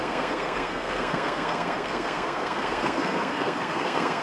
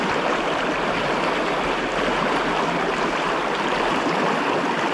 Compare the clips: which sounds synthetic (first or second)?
first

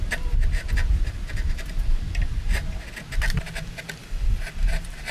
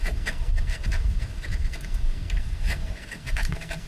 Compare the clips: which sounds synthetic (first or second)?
second